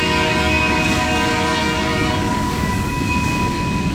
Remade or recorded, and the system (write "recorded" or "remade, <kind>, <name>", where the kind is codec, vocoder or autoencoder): remade, codec, DAC